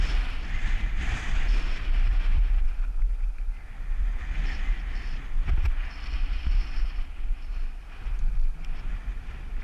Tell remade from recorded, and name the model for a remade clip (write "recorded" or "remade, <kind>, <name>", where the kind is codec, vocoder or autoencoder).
recorded